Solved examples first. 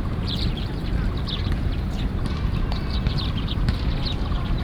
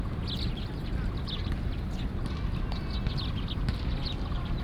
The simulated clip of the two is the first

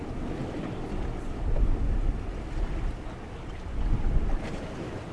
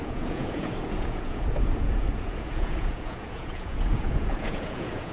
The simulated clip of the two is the second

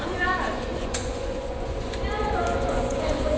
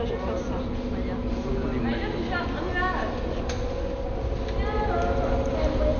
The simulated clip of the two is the first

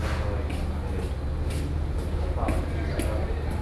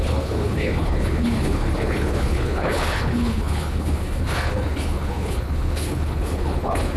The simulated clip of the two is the second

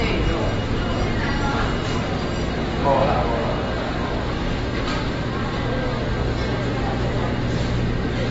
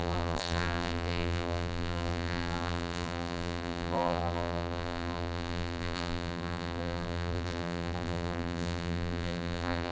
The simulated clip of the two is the second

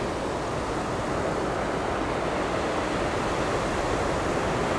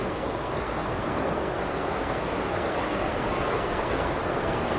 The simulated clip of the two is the second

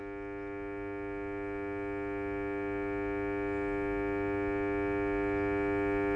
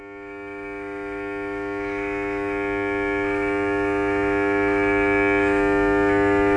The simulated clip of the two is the second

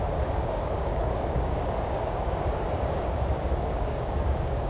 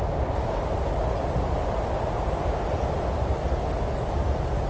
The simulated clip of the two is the first